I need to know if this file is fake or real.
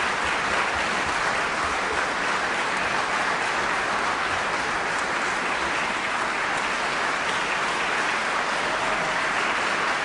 real